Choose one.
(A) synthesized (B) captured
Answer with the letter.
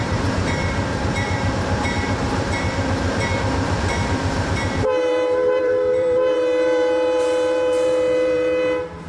A